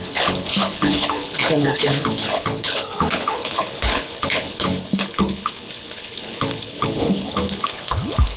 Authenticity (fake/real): fake